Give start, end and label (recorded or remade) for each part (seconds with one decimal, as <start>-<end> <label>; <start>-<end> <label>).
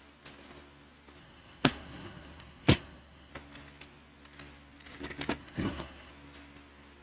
0.0-1.2 recorded; 1.2-3.3 remade; 3.3-5.4 recorded; 5.4-6.1 remade; 6.1-7.0 recorded